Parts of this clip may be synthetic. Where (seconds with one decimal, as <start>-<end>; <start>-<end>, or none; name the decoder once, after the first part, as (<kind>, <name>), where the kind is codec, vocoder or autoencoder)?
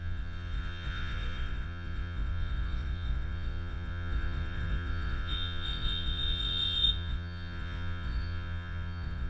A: 0.0-9.3 (vocoder, Vocos)